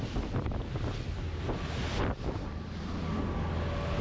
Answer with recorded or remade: recorded